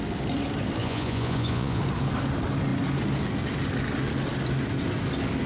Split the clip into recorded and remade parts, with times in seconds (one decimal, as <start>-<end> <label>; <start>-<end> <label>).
0.0-0.8 recorded; 0.8-1.8 remade; 1.8-5.5 recorded